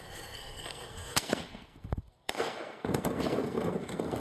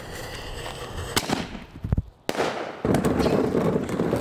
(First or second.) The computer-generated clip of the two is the first